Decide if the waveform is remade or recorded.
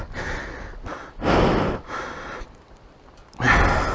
recorded